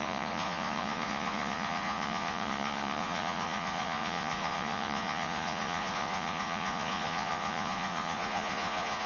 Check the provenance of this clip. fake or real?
fake